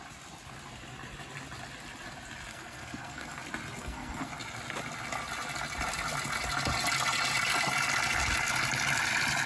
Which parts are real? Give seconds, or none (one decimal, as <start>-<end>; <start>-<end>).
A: 0.0-2.5; 3.4-3.8; 4.3-9.5